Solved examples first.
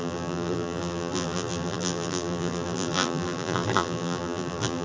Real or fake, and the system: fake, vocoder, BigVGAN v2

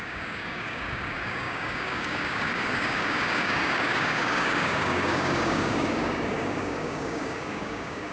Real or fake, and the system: fake, codec, DAC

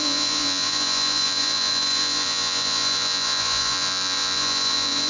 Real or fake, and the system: fake, vocoder, Vocos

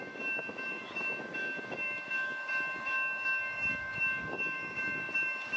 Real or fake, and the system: fake, autoencoder, DAC-VAE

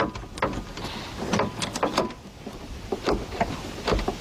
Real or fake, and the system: real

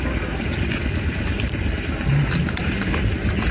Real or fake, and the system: fake, vocoder, BigVGAN v2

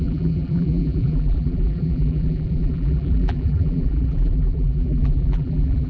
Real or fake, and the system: fake, vocoder, BigVGAN v2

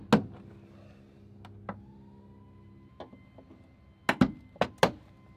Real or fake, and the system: real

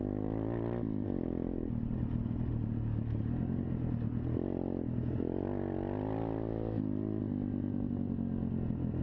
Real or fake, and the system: real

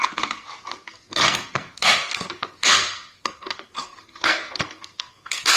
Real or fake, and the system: fake, codec, SNAC